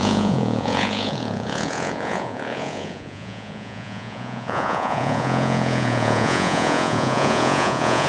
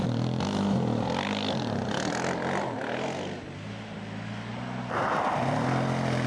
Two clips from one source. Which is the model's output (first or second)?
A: first